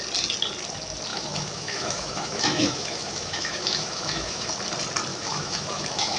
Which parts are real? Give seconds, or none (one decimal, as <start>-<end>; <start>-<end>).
0.0-1.1; 4.5-5.1